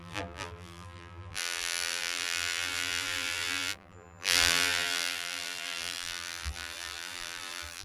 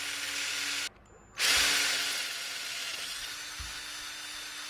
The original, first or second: second